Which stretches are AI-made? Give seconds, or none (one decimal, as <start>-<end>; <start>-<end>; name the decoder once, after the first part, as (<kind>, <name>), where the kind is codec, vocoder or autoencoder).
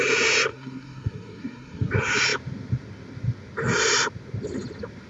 0.5-1.9 (codec, SNAC)